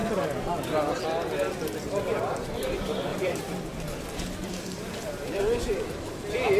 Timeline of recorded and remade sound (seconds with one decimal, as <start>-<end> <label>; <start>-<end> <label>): 0.0-2.2 recorded; 2.2-6.6 remade